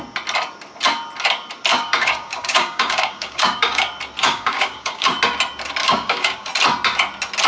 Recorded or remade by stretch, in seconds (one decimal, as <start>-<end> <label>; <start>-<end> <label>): 0.0-1.7 recorded; 1.7-3.8 remade; 3.8-4.2 recorded; 4.2-5.1 remade; 5.1-5.8 recorded; 5.8-6.5 remade; 6.5-7.5 recorded

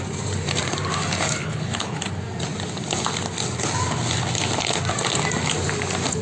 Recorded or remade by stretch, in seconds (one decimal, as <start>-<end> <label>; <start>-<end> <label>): 0.0-1.4 recorded; 1.4-2.0 remade; 2.0-6.2 recorded